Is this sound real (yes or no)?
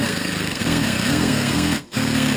no